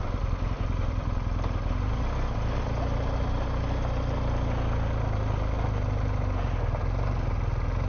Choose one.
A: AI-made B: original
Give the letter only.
B